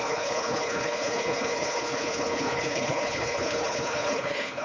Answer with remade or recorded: remade